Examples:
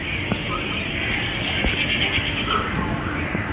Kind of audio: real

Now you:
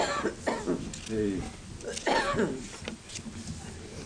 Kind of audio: real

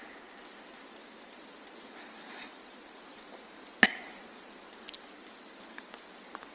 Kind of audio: real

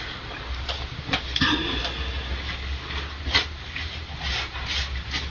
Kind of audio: real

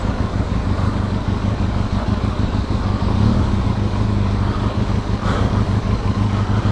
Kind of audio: fake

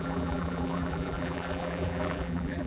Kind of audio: fake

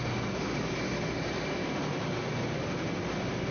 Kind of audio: real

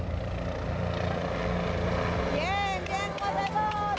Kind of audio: real